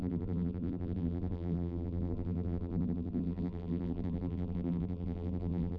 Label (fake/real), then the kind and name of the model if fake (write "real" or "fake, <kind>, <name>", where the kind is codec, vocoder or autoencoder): fake, vocoder, BigVGAN v2